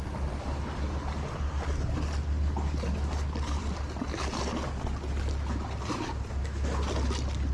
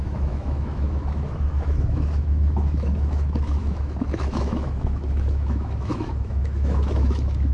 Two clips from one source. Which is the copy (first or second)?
second